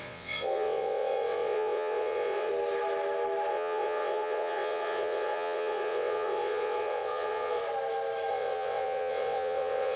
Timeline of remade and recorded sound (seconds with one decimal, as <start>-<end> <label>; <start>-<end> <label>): 0.0-2.5 remade; 2.5-3.5 recorded; 3.5-7.6 remade; 7.6-8.3 recorded; 8.3-10.0 remade